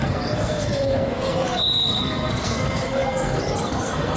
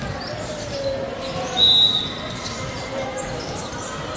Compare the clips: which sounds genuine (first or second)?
second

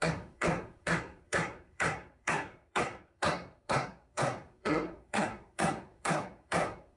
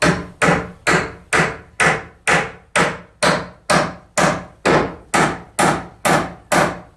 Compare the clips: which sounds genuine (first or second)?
second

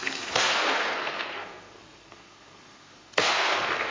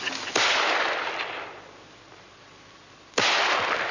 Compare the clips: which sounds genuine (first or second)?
second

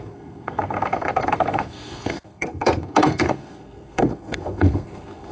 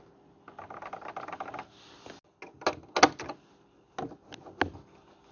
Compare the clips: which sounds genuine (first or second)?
second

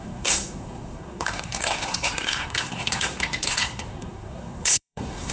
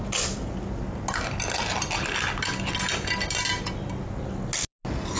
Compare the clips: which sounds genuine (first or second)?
second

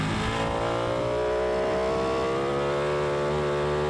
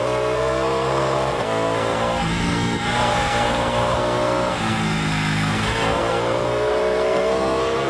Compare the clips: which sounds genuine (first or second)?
first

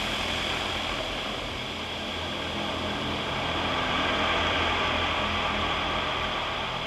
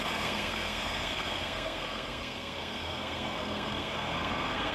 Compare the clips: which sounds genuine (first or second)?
first